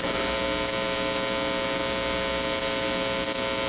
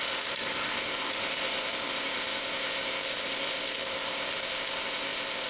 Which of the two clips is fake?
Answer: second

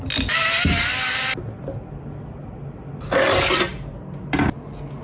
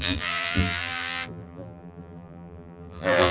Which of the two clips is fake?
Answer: second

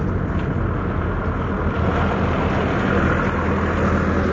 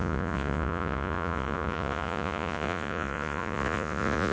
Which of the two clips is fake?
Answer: second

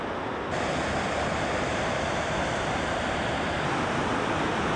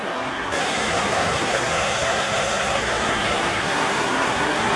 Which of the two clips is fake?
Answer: second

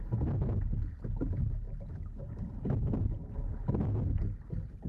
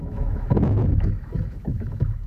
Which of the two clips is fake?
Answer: second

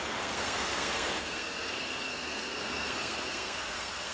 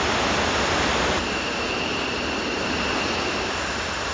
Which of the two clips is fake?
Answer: first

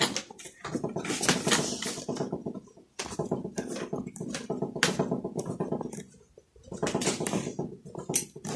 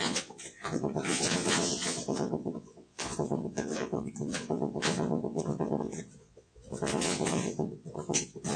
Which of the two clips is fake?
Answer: second